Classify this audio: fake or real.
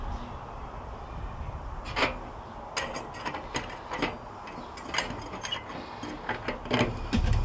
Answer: real